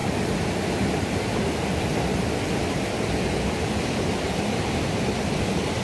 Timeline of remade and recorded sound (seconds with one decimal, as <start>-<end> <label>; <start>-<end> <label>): 0.0-5.8 recorded